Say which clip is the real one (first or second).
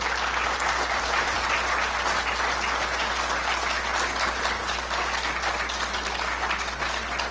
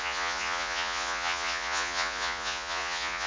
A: first